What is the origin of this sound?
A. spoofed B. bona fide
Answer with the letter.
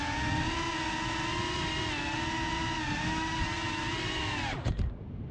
B